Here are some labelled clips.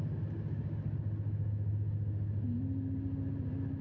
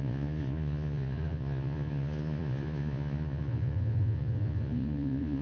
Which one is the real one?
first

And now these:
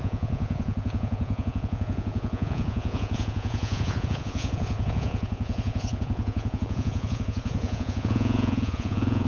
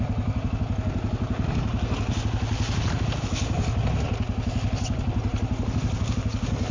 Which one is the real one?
second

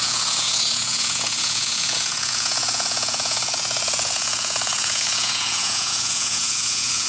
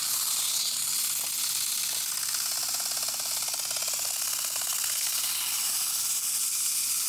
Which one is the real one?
second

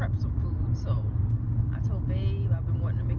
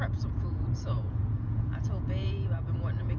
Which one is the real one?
first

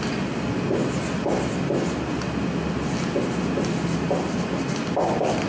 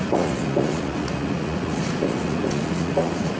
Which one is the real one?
first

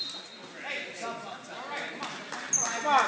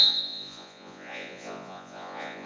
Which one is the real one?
first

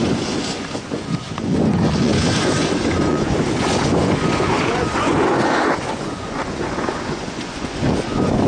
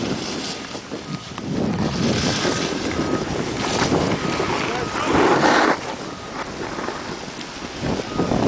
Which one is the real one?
second